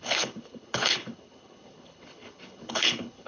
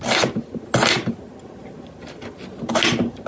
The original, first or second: second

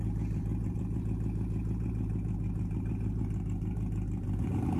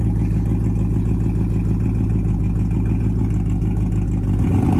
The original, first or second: second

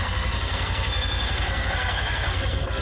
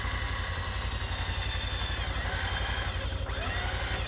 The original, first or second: second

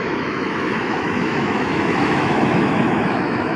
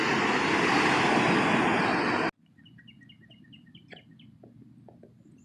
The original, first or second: second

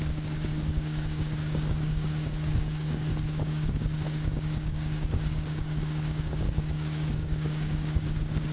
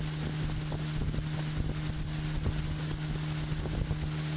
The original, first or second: second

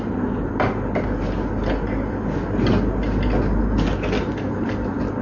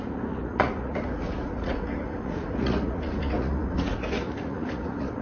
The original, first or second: first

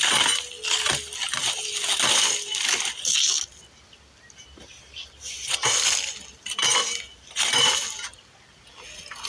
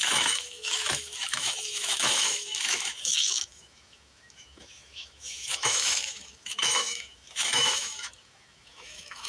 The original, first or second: first